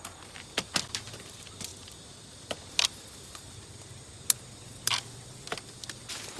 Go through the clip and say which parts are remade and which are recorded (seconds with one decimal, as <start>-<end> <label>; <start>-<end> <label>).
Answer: 0.0-6.4 recorded